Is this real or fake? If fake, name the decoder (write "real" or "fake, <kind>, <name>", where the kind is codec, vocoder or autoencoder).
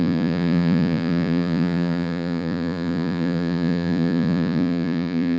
fake, vocoder, Vocos